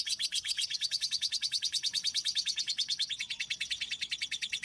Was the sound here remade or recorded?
remade